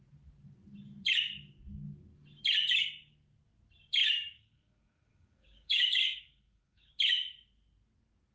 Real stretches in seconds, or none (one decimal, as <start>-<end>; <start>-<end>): 0.0-4.0; 6.9-8.3